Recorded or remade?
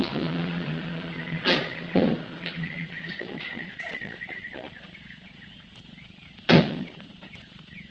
remade